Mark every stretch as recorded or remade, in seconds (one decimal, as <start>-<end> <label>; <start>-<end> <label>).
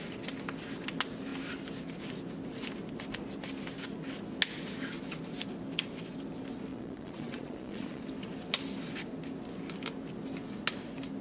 0.0-6.7 recorded; 6.7-8.0 remade; 8.0-11.2 recorded